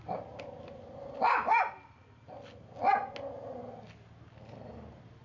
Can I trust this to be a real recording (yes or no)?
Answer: yes